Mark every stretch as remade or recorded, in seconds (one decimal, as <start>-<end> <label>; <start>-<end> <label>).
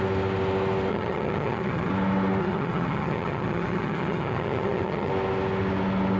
0.0-0.9 recorded; 0.9-1.9 remade; 1.9-2.4 recorded; 2.4-5.1 remade; 5.1-6.2 recorded